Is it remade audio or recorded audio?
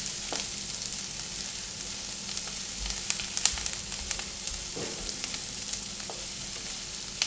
recorded